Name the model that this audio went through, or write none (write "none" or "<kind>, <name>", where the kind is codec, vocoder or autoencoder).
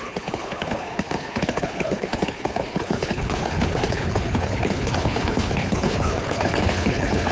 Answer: codec, HILCodec